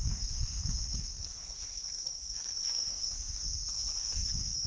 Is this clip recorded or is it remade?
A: remade